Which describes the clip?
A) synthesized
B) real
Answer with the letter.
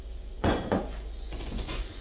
A